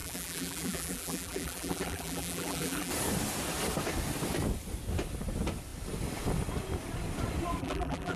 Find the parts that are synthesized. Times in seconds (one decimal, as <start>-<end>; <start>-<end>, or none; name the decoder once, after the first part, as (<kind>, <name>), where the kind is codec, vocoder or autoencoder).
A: 0.0-2.9 (vocoder, BigVGAN v2); 7.6-8.2